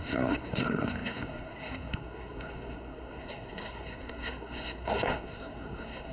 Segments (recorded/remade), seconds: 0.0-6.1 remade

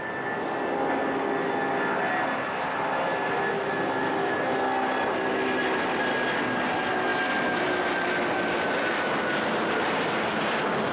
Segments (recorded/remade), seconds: 0.0-10.9 recorded

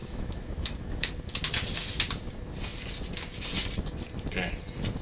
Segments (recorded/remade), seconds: 0.0-1.1 remade; 1.1-5.0 recorded

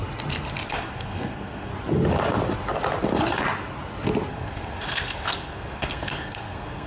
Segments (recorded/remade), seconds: 0.0-0.7 recorded; 0.7-1.7 remade; 1.7-4.3 recorded; 4.3-6.9 remade

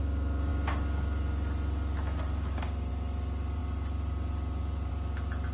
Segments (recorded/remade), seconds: 0.0-5.5 recorded

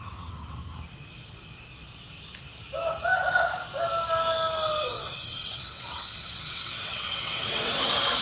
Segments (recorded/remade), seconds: 0.0-0.6 remade; 0.6-4.9 recorded; 4.9-8.2 remade

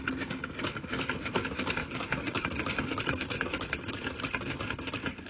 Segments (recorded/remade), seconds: 0.0-1.8 recorded; 1.8-4.2 remade; 4.2-5.3 recorded

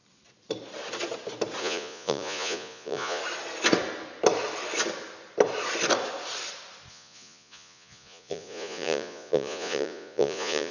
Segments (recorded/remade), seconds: 0.0-1.6 recorded; 1.6-3.2 remade; 3.2-6.9 recorded; 6.9-10.7 remade